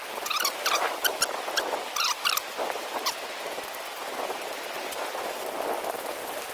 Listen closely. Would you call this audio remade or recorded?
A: recorded